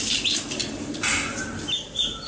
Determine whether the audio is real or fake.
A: real